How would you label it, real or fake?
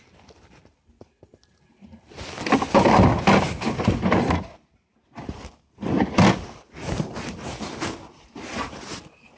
real